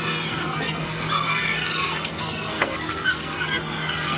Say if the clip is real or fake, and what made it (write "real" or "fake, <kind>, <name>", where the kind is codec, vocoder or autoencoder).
fake, codec, SNAC